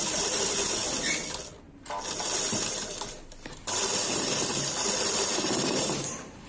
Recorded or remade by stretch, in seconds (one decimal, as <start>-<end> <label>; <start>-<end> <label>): 0.0-6.5 recorded